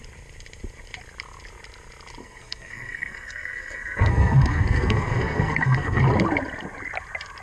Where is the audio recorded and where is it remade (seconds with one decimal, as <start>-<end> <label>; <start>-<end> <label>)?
0.0-2.2 recorded; 2.2-6.0 remade; 6.0-7.4 recorded